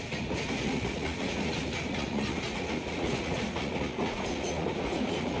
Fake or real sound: fake